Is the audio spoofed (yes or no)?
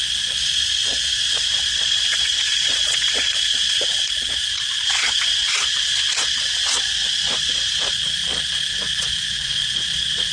yes